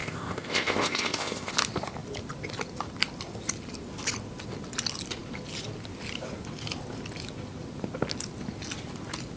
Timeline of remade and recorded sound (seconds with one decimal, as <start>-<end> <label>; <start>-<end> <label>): 0.0-1.5 remade; 1.5-9.4 recorded